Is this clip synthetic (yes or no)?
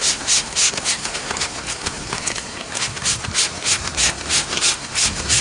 yes